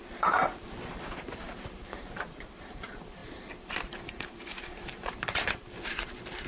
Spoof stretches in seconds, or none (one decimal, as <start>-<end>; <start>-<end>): 0.0-6.5